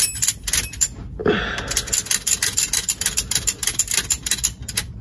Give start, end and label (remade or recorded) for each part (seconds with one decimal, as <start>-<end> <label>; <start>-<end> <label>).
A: 0.0-5.0 recorded